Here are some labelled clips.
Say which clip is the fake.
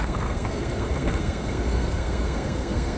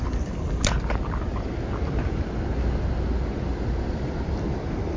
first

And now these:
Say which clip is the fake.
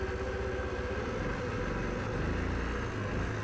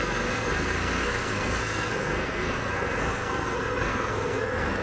second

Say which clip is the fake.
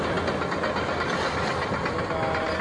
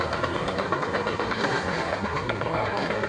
second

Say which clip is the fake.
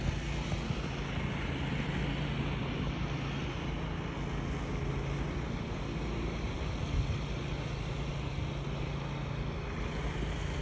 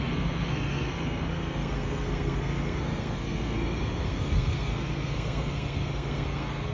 second